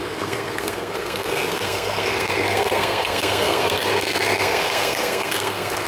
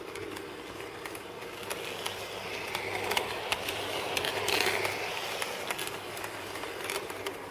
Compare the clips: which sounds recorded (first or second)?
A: second